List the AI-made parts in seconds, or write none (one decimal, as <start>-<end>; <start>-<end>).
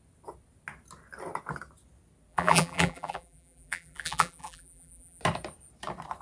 2.3-5.2